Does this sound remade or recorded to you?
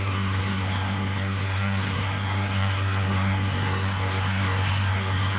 remade